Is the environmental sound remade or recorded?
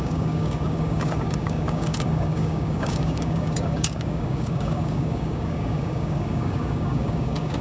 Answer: remade